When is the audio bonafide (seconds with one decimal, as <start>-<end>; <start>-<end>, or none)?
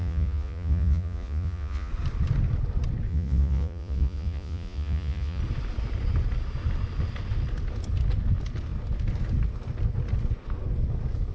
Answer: 1.9-3.1; 5.4-11.3